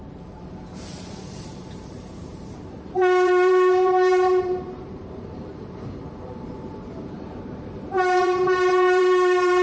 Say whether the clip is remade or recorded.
remade